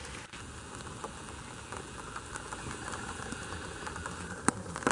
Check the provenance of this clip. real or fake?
real